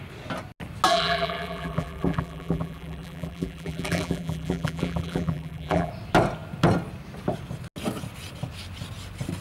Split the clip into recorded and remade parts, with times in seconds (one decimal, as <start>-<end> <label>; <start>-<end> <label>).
0.0-0.9 recorded; 0.9-5.9 remade; 5.9-9.4 recorded